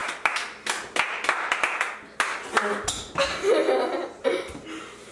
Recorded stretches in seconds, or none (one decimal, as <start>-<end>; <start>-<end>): 0.0-5.1